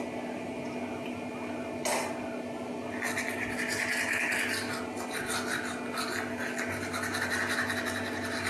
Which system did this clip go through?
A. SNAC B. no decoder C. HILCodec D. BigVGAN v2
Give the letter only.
B